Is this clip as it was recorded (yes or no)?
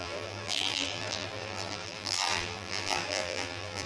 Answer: no